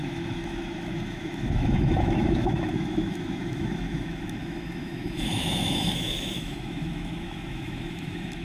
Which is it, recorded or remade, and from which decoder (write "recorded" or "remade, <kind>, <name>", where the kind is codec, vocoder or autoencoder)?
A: remade, autoencoder, DAC-VAE